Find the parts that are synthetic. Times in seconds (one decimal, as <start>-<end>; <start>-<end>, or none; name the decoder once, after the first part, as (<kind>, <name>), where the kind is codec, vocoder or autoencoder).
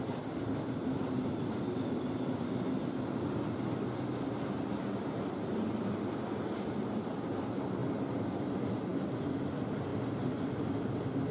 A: none